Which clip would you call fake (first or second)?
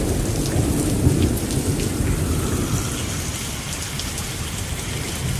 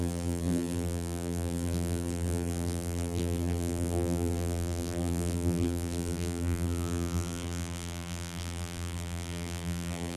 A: second